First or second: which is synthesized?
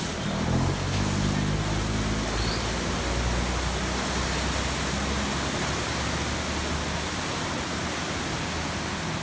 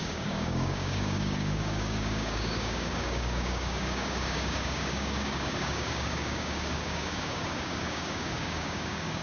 second